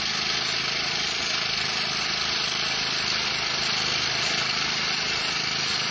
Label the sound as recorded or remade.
remade